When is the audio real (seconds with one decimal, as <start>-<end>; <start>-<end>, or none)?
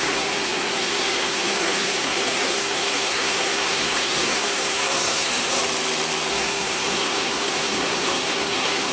5.6-6.3